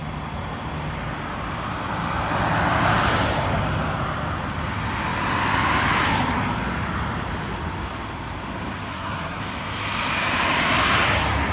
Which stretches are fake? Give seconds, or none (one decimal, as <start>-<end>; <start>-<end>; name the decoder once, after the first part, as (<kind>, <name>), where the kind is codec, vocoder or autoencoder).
8.9-9.4 (codec, SNAC)